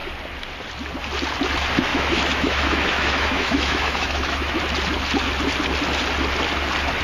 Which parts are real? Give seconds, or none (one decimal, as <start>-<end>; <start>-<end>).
0.0-1.9; 4.6-7.0